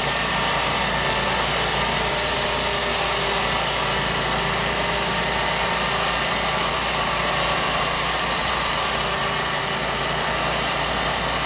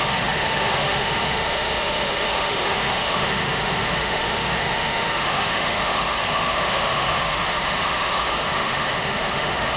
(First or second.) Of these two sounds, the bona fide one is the first